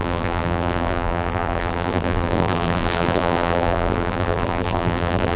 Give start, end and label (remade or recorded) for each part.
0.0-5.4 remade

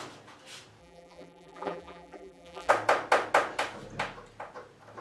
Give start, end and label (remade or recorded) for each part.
0.0-0.8 recorded; 0.8-2.7 remade; 2.7-5.0 recorded

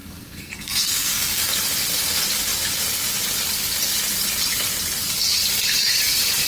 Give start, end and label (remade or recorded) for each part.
0.0-1.4 remade; 1.4-6.5 recorded

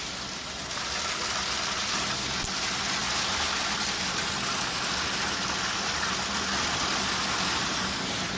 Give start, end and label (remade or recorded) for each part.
0.0-8.4 recorded

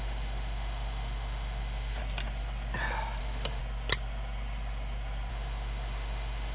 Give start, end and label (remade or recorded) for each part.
0.0-2.0 remade; 2.0-3.2 recorded; 3.2-3.6 remade; 3.6-5.3 recorded; 5.3-6.5 remade

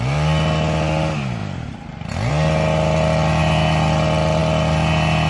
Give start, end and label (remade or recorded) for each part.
0.0-5.3 recorded

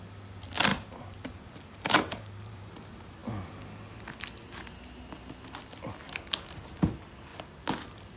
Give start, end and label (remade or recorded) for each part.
0.0-0.7 recorded; 0.7-2.7 remade; 2.7-8.2 recorded